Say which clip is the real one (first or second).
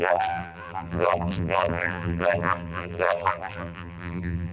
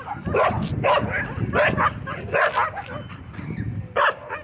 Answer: second